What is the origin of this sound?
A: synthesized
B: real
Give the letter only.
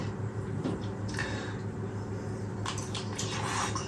B